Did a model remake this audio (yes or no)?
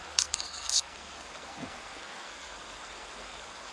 yes